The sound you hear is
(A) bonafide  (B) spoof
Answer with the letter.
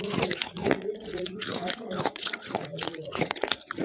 B